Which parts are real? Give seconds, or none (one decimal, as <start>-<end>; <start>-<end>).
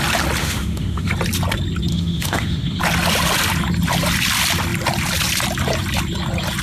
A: 0.0-0.4; 1.1-1.9; 2.8-6.6